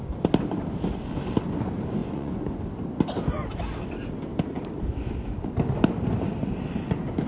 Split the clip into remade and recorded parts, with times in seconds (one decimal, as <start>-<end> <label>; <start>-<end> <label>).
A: 0.0-2.0 recorded; 2.0-2.6 remade; 2.6-7.3 recorded